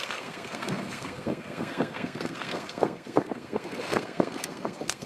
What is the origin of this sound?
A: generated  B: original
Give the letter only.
A